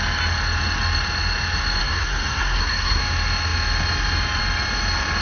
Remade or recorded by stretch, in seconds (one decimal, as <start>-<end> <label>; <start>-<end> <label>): 0.0-1.8 recorded; 1.8-3.0 remade; 3.0-5.2 recorded